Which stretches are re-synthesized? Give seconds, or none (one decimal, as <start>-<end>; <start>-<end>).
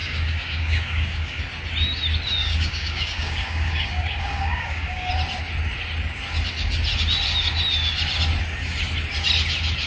0.0-1.4; 2.4-5.1